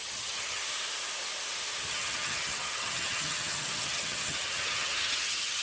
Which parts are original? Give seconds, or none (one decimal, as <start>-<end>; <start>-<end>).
0.6-1.9